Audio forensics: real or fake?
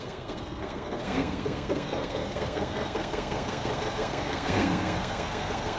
fake